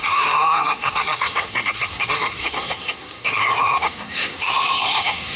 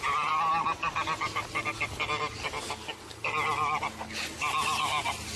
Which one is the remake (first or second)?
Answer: first